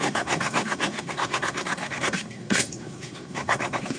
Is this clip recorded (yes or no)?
no